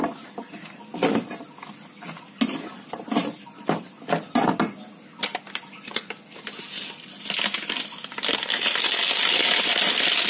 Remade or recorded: recorded